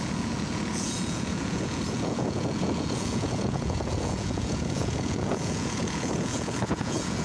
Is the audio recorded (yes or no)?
no